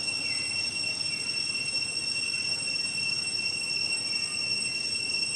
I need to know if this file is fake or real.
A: real